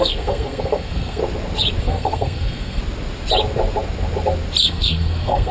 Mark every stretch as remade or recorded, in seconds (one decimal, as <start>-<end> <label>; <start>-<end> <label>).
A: 0.0-1.2 remade; 1.2-1.8 recorded; 1.8-2.8 remade; 2.8-4.6 recorded; 4.6-5.5 remade